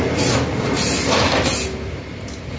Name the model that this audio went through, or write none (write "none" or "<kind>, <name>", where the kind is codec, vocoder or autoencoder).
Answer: vocoder, BigVGAN v2